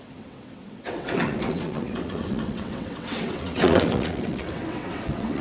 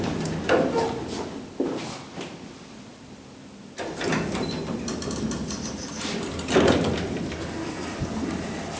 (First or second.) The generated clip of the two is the first